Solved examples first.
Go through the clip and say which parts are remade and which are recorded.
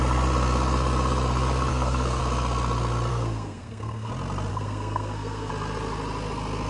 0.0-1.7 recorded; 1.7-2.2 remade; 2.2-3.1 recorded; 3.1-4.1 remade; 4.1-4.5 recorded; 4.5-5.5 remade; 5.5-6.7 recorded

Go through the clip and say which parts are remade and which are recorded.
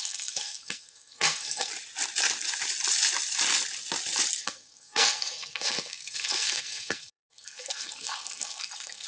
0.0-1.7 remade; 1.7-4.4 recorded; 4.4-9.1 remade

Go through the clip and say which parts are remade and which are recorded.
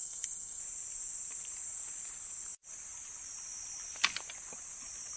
0.0-0.6 remade; 0.6-5.2 recorded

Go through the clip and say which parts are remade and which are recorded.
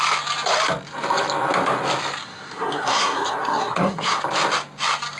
0.0-2.2 recorded; 2.2-4.2 remade; 4.2-5.2 recorded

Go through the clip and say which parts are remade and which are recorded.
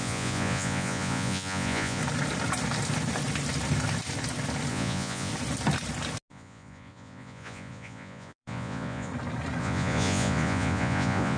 0.0-2.0 remade; 2.0-4.7 recorded; 4.7-5.3 remade; 5.3-6.3 recorded; 6.3-9.1 remade; 9.1-9.6 recorded; 9.6-11.4 remade